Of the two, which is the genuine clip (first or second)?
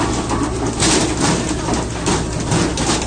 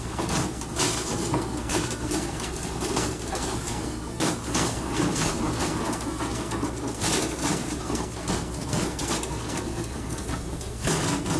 first